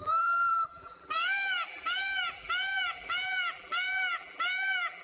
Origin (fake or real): fake